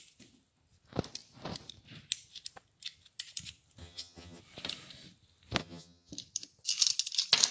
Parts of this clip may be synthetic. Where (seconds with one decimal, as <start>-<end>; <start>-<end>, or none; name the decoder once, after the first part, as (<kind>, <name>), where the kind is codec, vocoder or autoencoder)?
3.8-4.4 (vocoder, HiFi-GAN); 5.6-6.1